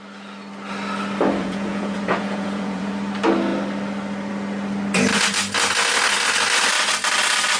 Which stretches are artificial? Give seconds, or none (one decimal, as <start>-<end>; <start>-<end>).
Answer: 1.4-2.9